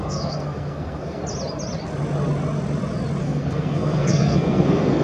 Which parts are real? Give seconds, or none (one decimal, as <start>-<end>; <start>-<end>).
1.2-3.2